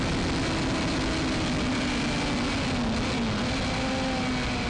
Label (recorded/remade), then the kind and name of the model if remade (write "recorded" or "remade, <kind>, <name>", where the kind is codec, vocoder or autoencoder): recorded